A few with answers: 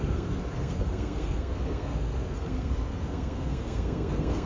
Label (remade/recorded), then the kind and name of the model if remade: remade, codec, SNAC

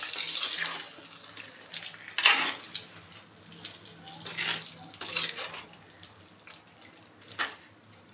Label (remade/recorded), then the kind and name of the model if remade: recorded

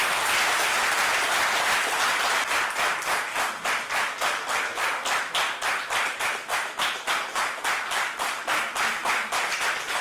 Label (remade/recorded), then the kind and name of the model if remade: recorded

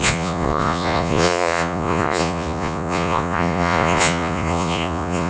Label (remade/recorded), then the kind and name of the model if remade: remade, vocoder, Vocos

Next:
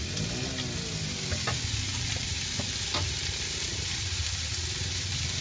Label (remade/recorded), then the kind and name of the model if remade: recorded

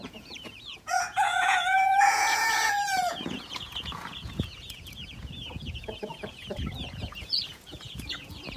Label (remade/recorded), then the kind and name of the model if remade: remade, vocoder, Vocos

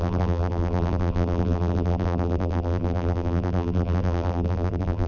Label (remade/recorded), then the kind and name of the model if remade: remade, vocoder, BigVGAN v2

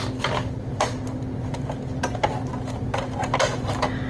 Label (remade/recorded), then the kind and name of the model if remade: recorded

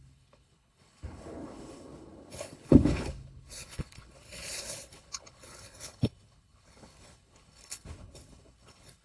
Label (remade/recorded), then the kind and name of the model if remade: remade, codec, HILCodec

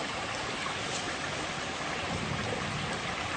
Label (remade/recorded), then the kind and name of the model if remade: recorded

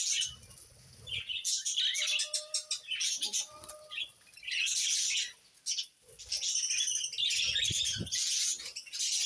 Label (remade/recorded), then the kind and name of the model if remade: recorded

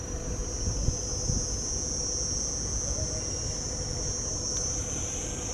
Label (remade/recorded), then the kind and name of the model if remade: recorded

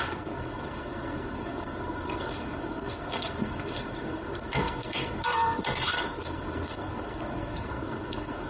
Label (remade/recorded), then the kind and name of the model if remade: remade, codec, SNAC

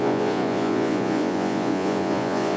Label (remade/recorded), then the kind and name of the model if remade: remade, vocoder, Vocos